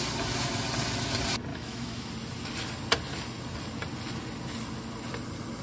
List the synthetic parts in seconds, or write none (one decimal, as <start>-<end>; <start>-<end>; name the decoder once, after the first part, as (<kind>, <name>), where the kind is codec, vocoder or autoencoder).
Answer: 1.5-2.1 (autoencoder, DAC-VAE)